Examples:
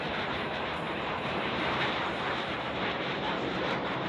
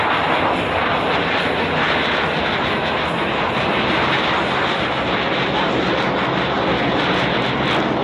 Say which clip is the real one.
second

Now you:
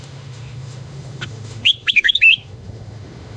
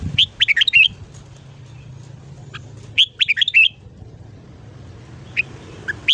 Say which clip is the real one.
second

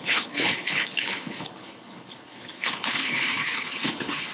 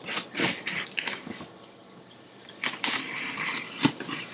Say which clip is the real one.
second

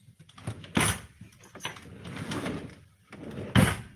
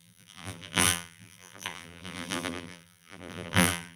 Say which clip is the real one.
first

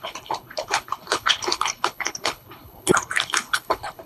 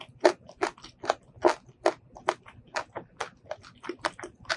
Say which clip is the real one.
second